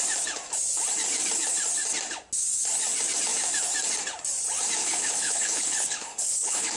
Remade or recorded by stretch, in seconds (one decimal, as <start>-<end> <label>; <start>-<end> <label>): 0.0-4.8 recorded; 4.8-6.8 remade

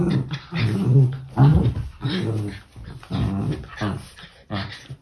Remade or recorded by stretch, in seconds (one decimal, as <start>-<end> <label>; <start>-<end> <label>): 0.0-5.0 recorded